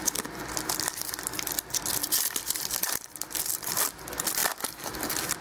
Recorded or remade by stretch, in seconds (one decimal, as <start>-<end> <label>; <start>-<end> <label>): 0.0-2.8 recorded; 2.8-5.4 remade